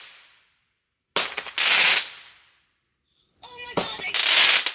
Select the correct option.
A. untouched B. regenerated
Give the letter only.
A